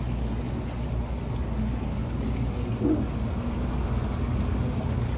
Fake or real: real